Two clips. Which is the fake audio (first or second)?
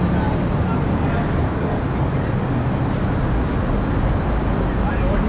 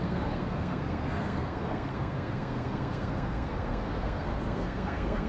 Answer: second